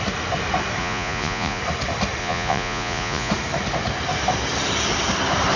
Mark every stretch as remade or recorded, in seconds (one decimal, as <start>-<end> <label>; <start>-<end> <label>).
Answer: 0.0-0.8 recorded; 0.8-1.6 remade; 1.6-2.2 recorded; 2.2-3.3 remade; 3.3-5.6 recorded